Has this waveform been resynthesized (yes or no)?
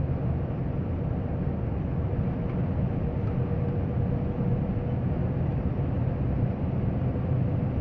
no